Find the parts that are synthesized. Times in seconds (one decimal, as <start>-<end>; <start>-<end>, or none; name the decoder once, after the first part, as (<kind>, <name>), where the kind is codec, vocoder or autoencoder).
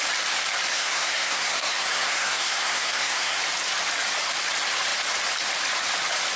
0.7-3.4 (codec, SNAC)